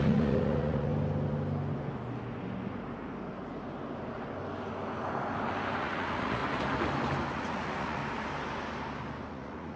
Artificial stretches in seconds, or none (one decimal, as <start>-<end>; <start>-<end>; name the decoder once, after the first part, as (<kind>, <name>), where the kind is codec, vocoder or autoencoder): 0.0-0.9 (vocoder, Vocos); 5.8-6.4; 7.3-8.0; 9.3-9.8